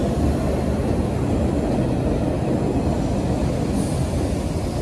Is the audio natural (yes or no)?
yes